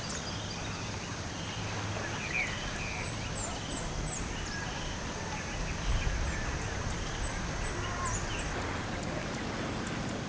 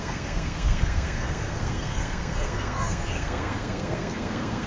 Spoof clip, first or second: second